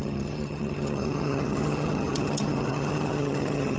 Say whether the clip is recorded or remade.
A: remade